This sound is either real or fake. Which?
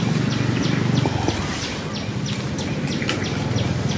real